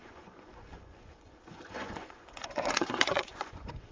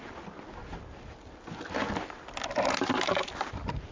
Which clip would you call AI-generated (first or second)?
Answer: first